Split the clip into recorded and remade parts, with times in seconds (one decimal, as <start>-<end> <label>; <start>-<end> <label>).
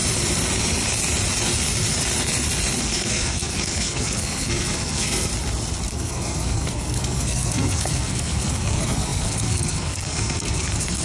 0.0-2.8 recorded; 2.8-5.3 remade; 5.3-5.9 recorded; 5.9-11.0 remade